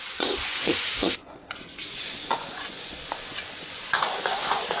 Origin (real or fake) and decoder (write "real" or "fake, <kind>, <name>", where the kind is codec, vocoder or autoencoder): fake, vocoder, Vocos